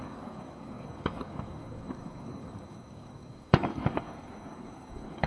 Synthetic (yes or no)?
yes